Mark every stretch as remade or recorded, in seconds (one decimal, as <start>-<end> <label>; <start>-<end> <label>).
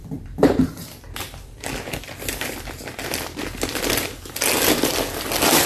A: 0.0-2.2 remade; 2.2-5.7 recorded